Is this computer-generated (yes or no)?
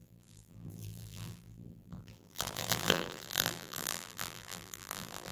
yes